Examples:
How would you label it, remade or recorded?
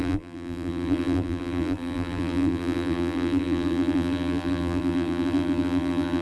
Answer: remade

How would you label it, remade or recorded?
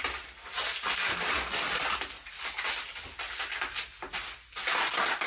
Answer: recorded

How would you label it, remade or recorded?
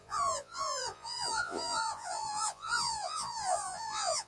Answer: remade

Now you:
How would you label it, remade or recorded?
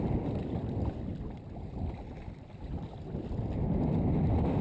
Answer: recorded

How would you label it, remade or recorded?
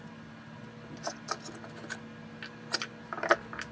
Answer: recorded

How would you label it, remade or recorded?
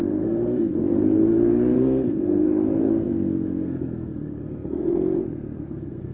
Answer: remade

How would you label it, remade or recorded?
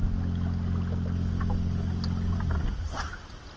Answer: recorded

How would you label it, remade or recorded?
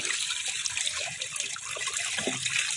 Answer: recorded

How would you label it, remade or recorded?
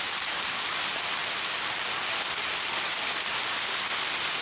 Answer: recorded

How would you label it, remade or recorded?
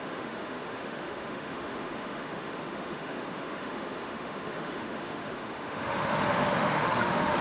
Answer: remade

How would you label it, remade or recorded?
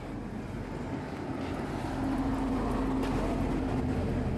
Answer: recorded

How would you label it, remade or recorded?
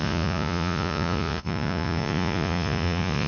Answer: remade